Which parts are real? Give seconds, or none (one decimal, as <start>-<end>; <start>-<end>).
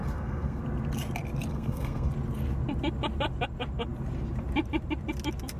0.6-1.5; 2.1-5.6